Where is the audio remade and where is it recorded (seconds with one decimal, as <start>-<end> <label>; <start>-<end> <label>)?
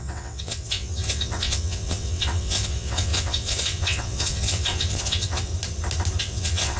0.0-5.5 remade; 5.5-6.2 recorded; 6.2-6.8 remade